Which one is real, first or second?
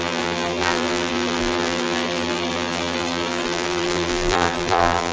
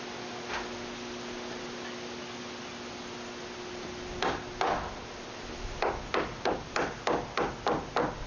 second